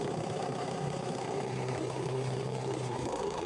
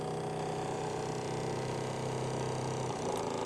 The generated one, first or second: first